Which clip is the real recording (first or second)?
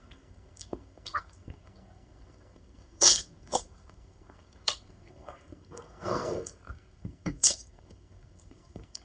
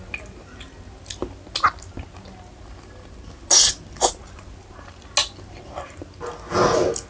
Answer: second